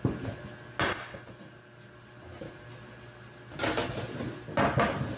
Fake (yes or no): no